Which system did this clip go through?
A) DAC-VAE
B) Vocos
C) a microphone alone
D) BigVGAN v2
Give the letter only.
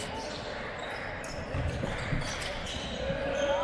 C